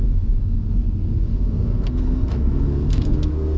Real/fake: fake